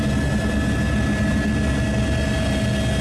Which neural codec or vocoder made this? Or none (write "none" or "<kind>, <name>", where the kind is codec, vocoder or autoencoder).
none